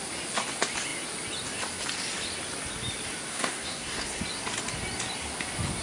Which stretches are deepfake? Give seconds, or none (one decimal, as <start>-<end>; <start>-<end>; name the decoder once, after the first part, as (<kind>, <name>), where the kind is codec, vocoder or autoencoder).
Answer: 3.3-4.2 (codec, SNAC)